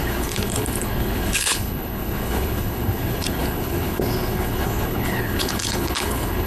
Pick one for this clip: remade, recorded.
remade